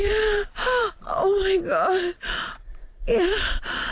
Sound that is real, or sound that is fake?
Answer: fake